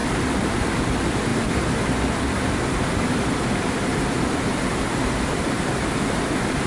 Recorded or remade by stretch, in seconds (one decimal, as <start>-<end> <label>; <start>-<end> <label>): 0.0-0.5 remade; 0.5-6.7 recorded